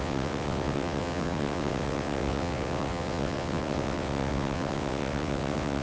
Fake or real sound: fake